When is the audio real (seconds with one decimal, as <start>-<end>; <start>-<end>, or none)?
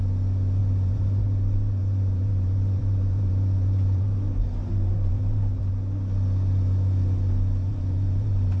0.0-0.6; 5.7-7.7